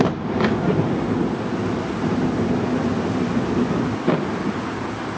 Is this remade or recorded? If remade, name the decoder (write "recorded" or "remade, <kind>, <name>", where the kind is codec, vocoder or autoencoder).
recorded